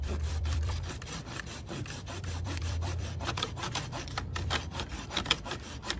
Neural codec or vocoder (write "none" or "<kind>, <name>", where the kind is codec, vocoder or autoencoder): vocoder, BigVGAN v2